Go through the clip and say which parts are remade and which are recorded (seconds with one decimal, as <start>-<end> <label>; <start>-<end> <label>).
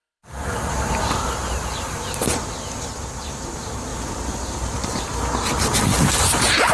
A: 0.0-2.4 remade; 2.4-3.2 recorded; 3.2-6.7 remade